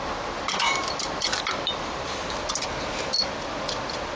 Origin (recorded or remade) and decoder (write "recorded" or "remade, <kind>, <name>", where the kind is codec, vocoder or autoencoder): recorded